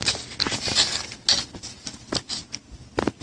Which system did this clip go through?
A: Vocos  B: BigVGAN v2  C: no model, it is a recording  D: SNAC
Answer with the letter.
C